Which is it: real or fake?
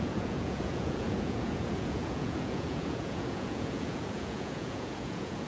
fake